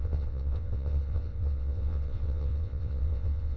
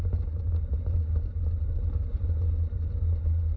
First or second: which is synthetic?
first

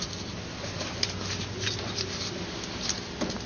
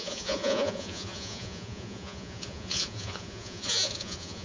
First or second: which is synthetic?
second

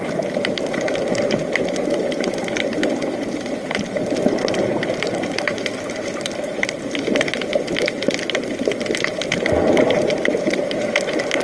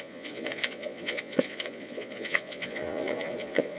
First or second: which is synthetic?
second